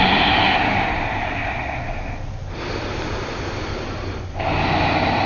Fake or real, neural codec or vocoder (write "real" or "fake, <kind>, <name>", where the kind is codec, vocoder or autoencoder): real